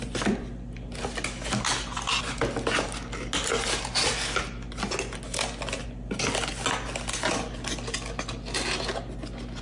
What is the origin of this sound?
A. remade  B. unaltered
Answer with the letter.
B